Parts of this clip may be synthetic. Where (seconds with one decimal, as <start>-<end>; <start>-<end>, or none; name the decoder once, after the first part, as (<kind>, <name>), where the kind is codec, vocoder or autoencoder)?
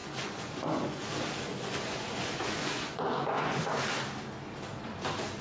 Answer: 0.0-1.1 (vocoder, Vocos); 1.5-3.6